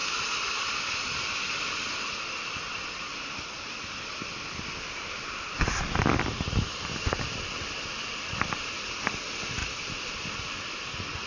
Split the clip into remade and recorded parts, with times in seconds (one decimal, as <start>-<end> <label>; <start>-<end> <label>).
0.0-2.2 recorded; 2.2-11.3 remade